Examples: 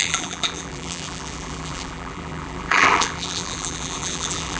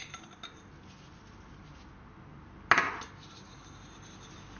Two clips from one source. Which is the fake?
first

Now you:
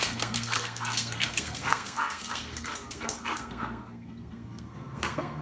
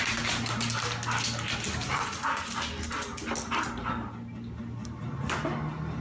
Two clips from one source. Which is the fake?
first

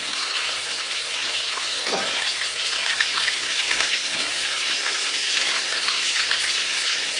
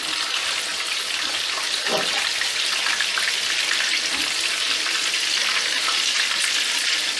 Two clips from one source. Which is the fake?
first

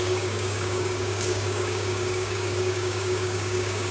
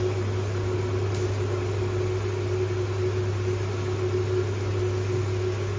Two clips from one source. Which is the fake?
first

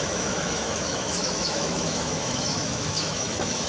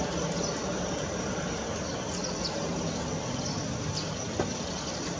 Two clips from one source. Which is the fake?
first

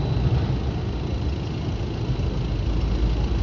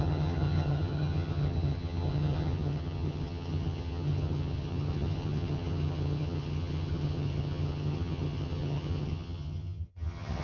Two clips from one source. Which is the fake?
second